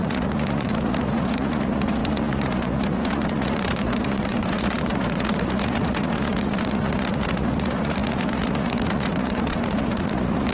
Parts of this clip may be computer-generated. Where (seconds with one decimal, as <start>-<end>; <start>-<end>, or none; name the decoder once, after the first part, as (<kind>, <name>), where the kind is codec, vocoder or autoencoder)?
0.0-10.5 (vocoder, Vocos)

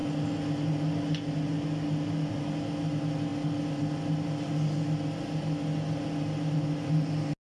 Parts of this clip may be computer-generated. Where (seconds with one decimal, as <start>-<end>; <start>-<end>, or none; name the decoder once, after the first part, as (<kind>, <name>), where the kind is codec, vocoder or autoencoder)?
none

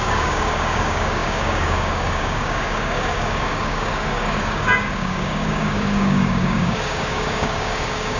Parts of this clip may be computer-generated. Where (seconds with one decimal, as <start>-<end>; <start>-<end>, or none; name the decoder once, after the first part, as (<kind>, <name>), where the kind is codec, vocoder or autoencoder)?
0.0-8.2 (codec, DAC)

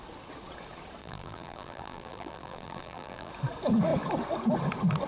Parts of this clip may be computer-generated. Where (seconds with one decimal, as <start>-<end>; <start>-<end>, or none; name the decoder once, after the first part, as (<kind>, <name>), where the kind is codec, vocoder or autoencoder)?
1.0-3.3 (vocoder, BigVGAN v2)

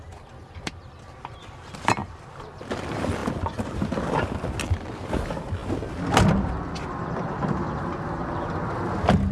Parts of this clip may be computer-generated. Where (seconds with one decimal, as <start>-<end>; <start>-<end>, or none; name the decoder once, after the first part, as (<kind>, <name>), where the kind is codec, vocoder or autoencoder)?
none

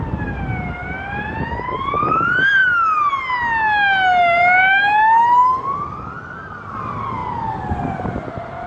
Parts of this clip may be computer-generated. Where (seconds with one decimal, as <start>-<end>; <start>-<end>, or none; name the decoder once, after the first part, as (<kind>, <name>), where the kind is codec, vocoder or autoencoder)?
none